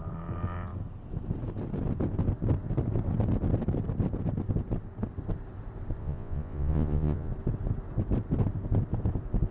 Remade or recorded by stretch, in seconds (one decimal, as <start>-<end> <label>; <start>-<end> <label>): 0.0-6.0 recorded; 6.0-7.3 remade; 7.3-9.5 recorded

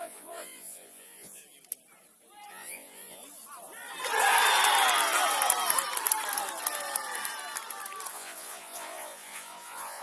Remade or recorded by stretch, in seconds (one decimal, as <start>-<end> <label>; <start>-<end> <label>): 0.0-1.4 remade; 1.4-2.5 recorded; 2.5-3.2 remade; 3.2-8.1 recorded; 8.1-10.0 remade

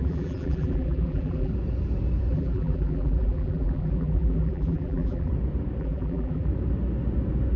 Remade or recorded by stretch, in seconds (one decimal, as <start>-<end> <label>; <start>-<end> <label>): 0.0-1.5 remade; 1.5-2.3 recorded; 2.3-5.3 remade; 5.3-5.8 recorded; 5.8-6.5 remade; 6.5-7.6 recorded